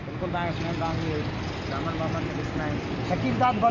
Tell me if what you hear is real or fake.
real